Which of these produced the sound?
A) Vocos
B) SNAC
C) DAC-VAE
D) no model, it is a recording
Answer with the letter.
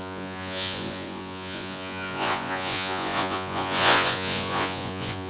A